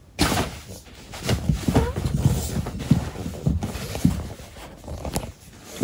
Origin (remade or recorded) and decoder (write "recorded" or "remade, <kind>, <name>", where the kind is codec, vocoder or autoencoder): recorded